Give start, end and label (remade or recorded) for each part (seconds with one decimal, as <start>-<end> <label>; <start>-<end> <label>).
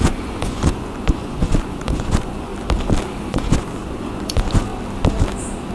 0.0-2.5 remade; 2.5-3.2 recorded; 3.2-4.7 remade; 4.7-5.7 recorded